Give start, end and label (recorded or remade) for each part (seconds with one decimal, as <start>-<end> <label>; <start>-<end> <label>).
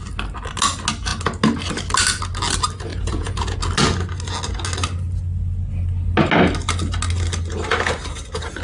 0.0-2.9 recorded; 2.9-3.6 remade; 3.6-8.6 recorded